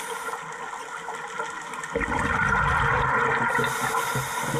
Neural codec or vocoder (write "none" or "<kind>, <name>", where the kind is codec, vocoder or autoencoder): none